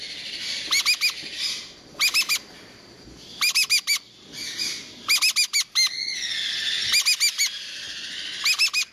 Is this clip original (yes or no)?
yes